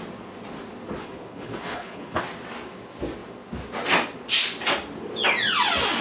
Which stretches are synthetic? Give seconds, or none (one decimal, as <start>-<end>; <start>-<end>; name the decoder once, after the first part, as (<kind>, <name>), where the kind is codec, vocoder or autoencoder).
1.0-2.2 (codec, HILCodec)